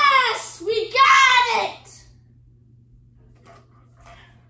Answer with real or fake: real